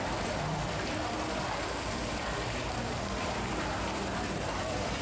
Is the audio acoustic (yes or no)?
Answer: no